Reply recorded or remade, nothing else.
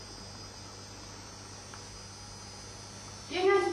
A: recorded